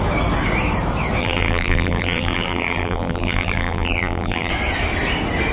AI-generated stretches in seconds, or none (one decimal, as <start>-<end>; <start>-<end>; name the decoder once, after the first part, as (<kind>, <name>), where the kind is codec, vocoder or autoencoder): 1.2-4.5 (vocoder, BigVGAN v2)